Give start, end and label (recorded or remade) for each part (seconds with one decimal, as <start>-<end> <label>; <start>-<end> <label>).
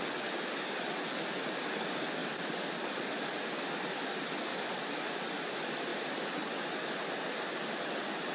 0.0-2.2 recorded; 2.2-2.9 remade; 2.9-4.5 recorded; 4.5-5.4 remade; 5.4-8.3 recorded